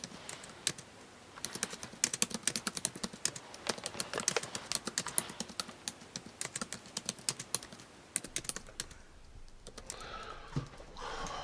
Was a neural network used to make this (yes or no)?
no